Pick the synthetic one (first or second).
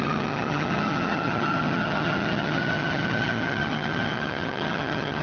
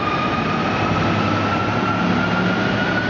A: first